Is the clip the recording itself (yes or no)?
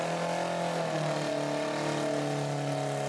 yes